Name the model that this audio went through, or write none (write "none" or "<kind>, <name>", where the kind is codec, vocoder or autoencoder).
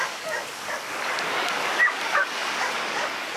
codec, DAC